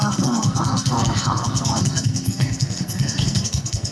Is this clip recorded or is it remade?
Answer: remade